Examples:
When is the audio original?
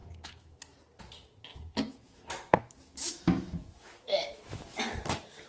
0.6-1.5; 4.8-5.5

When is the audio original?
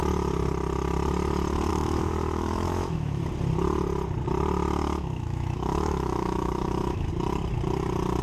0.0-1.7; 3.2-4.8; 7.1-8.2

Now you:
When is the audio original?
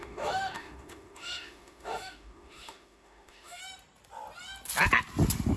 3.6-5.6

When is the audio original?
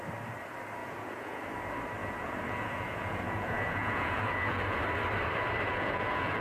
0.0-0.8; 1.4-2.0; 4.8-5.7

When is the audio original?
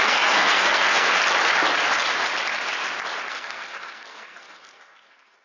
1.2-3.3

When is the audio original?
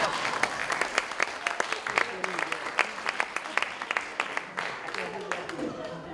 0.0-6.1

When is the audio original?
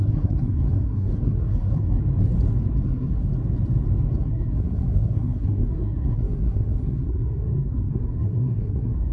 2.0-2.8; 3.3-4.2